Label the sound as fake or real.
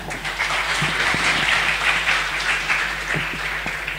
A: fake